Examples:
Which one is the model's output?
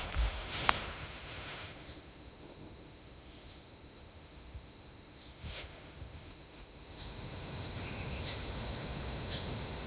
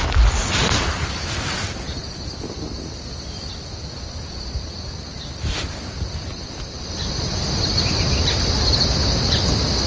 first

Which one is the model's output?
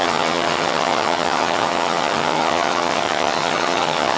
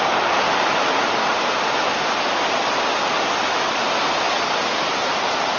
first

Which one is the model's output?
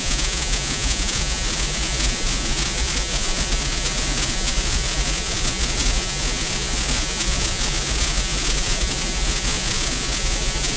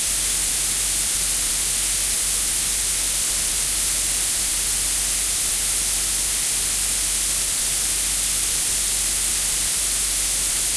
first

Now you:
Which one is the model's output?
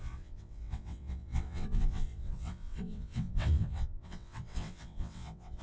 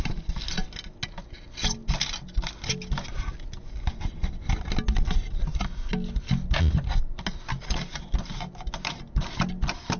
first